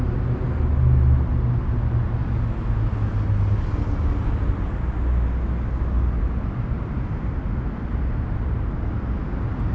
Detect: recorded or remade recorded